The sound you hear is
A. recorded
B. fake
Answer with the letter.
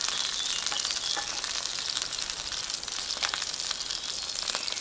A